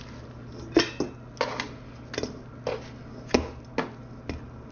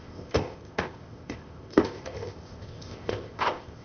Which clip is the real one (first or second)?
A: first